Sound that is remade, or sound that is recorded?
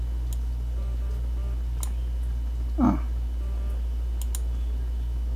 recorded